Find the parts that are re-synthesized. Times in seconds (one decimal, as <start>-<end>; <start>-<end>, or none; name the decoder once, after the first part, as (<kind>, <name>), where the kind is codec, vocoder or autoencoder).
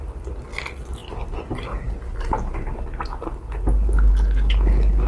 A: none